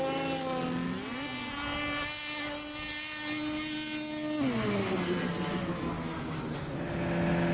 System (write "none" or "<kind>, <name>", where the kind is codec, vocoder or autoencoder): none